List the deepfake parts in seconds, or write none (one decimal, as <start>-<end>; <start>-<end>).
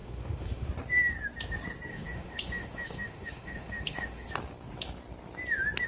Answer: 0.0-0.7; 1.9-4.3